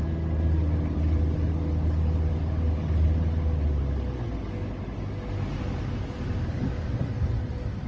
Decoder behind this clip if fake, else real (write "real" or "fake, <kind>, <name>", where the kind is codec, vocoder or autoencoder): real